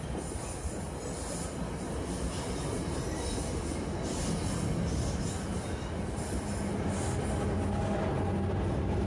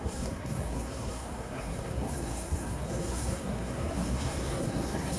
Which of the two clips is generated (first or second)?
second